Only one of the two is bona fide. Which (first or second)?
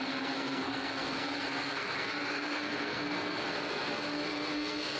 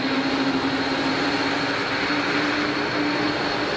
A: second